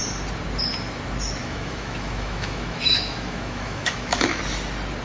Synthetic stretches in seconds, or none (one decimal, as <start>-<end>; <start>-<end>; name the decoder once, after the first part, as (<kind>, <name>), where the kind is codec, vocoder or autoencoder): 1.4-4.4 (autoencoder, DAC-VAE)